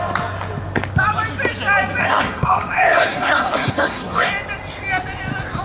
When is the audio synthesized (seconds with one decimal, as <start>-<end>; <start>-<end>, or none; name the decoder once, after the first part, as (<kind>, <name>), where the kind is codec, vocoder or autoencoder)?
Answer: 2.0-4.3 (codec, SNAC)